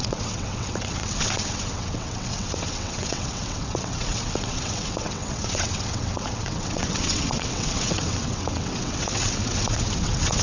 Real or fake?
fake